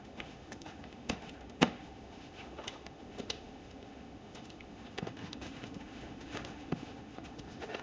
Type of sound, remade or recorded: remade